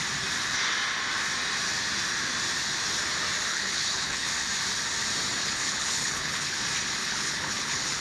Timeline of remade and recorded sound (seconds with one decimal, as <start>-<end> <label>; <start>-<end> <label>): 0.0-3.5 recorded; 3.5-4.3 remade; 4.3-5.4 recorded; 5.4-6.6 remade; 6.6-7.0 recorded; 7.0-8.0 remade

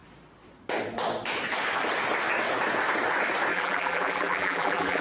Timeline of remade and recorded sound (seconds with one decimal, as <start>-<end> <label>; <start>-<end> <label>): 0.0-3.5 recorded; 3.5-5.0 remade

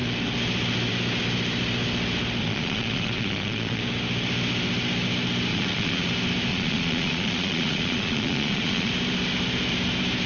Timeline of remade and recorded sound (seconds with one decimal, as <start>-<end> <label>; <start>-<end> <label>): 0.0-2.4 recorded; 2.4-3.8 remade; 3.8-5.5 recorded; 5.5-6.1 remade; 6.1-6.5 recorded; 6.5-8.9 remade; 8.9-10.3 recorded

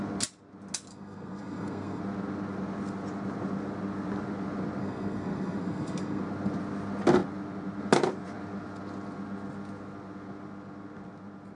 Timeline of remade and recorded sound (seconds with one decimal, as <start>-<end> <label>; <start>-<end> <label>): 0.0-0.9 recorded; 0.9-2.0 remade; 2.0-4.8 recorded; 4.8-6.2 remade; 6.2-11.5 recorded

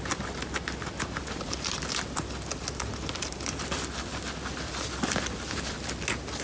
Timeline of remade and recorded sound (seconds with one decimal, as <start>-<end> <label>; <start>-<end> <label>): 0.0-6.4 recorded

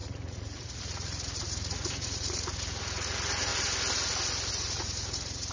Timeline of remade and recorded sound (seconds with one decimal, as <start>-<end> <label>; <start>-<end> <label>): 0.0-3.5 remade; 3.5-4.5 recorded; 4.5-5.5 remade

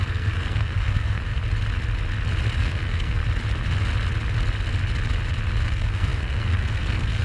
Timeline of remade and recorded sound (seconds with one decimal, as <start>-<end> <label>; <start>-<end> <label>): 0.0-1.4 remade; 1.4-2.6 recorded; 2.6-3.2 remade; 3.2-5.6 recorded; 5.6-7.2 remade